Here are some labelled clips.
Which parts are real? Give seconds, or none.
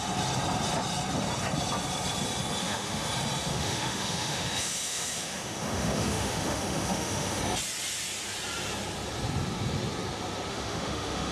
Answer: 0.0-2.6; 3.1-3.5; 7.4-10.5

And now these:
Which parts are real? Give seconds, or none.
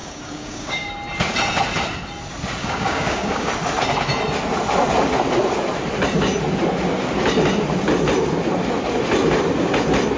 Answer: 0.9-2.6; 3.5-10.2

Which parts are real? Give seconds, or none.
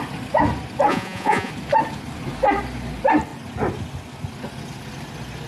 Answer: 0.0-0.9; 1.5-5.5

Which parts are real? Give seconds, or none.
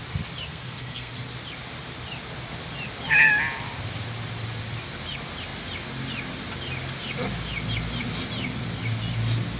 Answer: 0.0-0.5; 1.1-9.6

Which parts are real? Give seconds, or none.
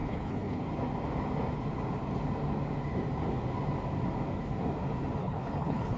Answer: 0.6-5.2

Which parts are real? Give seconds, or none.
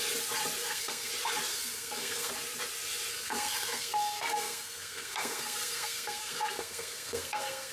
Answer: 0.0-0.6; 1.1-1.5; 2.3-3.1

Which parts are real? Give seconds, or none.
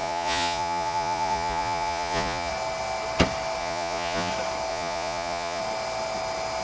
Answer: 2.5-3.6; 4.3-4.7; 5.6-6.6